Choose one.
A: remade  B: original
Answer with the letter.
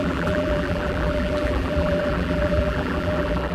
A